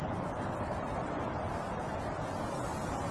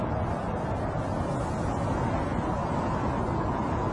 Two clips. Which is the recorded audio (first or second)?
second